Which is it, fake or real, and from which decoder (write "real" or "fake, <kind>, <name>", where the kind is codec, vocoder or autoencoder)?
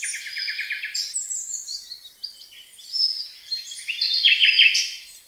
real